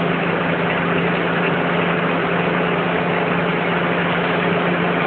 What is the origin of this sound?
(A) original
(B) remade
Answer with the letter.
A